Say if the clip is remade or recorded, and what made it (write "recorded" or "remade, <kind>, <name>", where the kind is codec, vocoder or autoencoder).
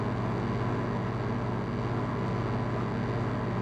recorded